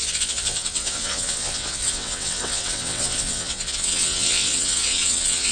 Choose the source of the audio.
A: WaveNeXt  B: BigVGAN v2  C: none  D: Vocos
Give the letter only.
A